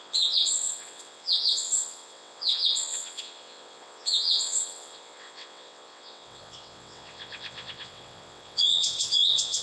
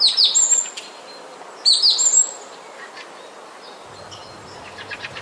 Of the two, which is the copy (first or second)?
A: first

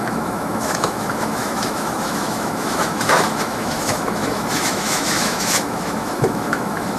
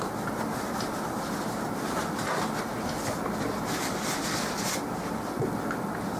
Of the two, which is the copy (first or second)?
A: first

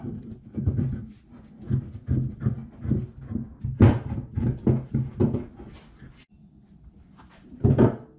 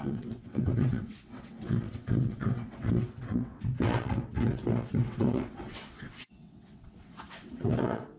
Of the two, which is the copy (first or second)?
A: second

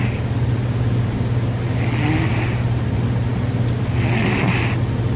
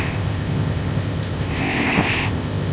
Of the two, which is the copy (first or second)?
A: second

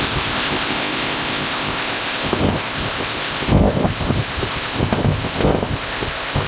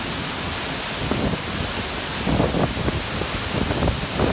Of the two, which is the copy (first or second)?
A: first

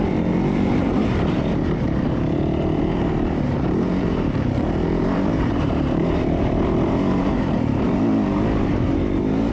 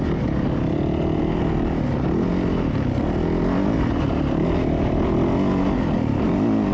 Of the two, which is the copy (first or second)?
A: first